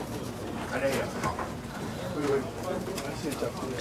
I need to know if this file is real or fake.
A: fake